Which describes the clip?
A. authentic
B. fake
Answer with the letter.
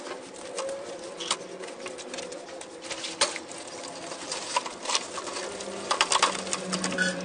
A